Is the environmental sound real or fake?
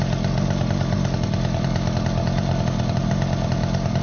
real